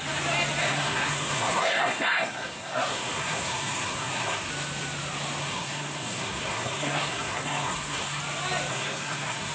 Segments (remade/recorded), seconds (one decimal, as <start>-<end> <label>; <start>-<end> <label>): 0.0-0.6 recorded; 0.6-4.5 remade; 4.5-5.4 recorded; 5.4-8.2 remade; 8.2-8.7 recorded; 8.7-9.5 remade